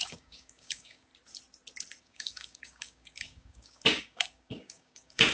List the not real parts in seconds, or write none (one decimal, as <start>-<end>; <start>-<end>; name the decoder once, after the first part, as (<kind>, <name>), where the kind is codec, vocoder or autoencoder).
0.0-1.1 (codec, DAC); 2.0-5.3